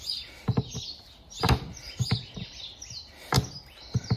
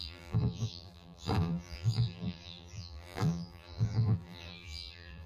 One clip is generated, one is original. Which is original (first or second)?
first